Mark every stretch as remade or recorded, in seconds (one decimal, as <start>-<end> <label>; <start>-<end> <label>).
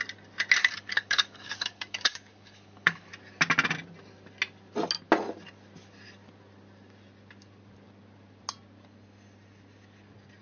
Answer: 0.0-0.6 recorded; 0.6-3.1 remade; 3.1-10.4 recorded